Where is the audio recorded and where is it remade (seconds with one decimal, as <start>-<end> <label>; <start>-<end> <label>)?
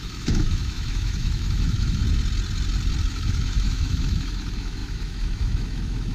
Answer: 0.0-2.0 remade; 2.0-3.1 recorded; 3.1-6.1 remade